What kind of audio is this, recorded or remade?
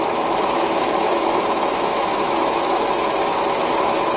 remade